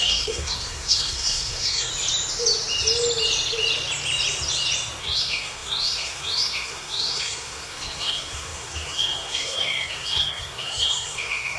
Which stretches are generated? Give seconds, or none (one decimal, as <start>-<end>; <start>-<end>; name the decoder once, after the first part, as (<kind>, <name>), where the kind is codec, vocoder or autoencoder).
0.0-1.9 (codec, SNAC); 5.0-11.6